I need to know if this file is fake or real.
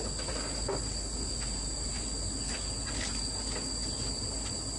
real